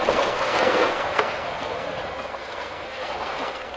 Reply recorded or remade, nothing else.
remade